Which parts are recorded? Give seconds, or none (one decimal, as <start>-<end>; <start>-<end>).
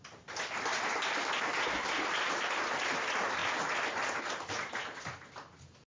0.0-5.9